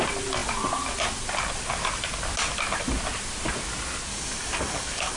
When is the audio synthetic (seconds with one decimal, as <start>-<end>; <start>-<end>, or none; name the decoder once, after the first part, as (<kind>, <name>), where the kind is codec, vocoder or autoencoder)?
4.1-5.2 (codec, DAC)